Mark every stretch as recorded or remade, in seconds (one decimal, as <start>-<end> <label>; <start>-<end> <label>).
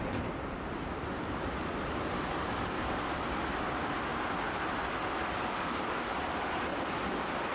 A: 0.0-7.5 recorded